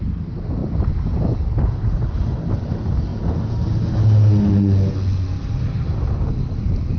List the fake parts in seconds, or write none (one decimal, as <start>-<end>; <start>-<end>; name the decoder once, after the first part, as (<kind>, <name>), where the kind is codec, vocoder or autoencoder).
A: none